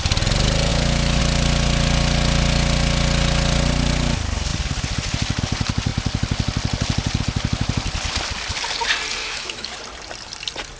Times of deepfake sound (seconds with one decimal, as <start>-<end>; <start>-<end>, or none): 0.7-1.2; 9.2-9.8